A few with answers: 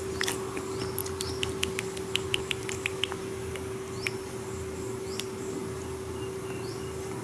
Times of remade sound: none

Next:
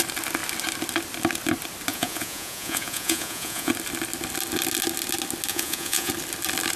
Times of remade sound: 1.9-3.7 (vocoder, Vocos); 5.5-6.1

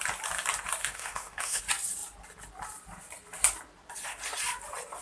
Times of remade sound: 0.8-1.6 (autoencoder, DAC-VAE)

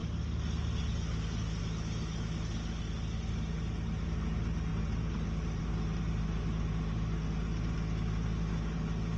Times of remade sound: none

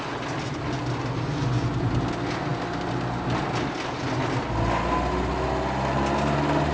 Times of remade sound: none

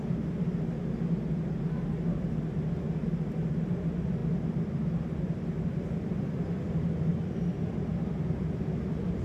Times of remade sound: none

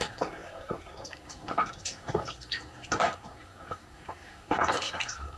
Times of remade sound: 0.0-5.4 (codec, SNAC)

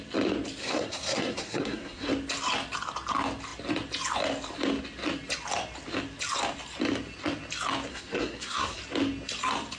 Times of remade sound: 0.6-2.1 (codec, SNAC); 7.9-8.8